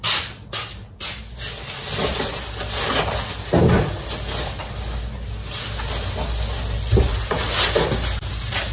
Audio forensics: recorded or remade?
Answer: recorded